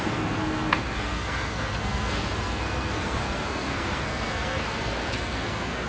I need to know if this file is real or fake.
fake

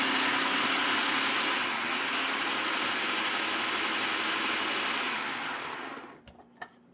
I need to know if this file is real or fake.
real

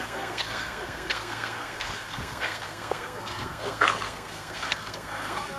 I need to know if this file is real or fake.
fake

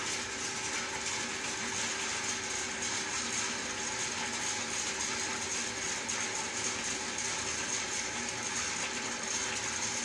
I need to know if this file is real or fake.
real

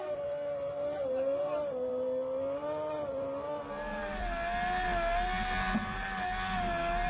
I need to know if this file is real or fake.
real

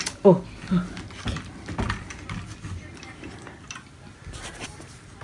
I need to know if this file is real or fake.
real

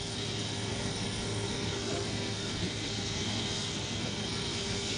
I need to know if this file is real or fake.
fake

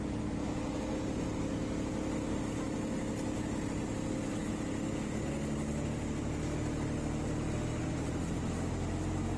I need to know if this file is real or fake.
real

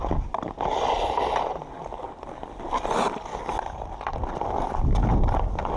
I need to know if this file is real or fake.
real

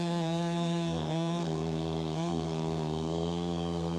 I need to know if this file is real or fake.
fake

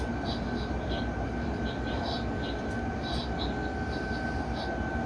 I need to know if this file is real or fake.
real